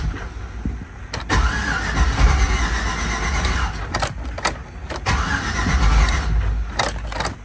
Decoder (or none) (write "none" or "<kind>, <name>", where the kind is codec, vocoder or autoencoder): none